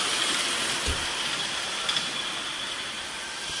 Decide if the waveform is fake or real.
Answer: real